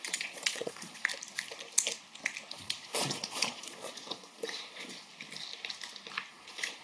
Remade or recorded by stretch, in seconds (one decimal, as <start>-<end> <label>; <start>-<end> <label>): 0.0-1.1 remade; 1.1-2.5 recorded; 2.5-5.1 remade; 5.1-6.3 recorded; 6.3-6.8 remade